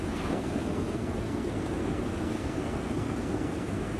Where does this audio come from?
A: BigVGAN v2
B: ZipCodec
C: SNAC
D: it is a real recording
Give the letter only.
C